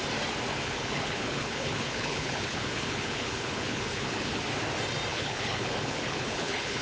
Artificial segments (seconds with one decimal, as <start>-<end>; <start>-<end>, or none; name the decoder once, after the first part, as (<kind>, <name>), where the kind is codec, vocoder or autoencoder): 0.5-4.4 (codec, HILCodec); 5.1-6.8